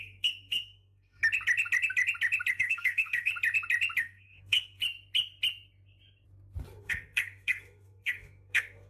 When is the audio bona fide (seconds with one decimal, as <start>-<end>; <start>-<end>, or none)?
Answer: 1.2-2.5; 3.3-4.0; 4.8-6.8